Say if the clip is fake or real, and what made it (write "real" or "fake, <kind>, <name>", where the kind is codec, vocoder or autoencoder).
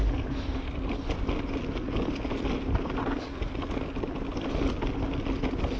real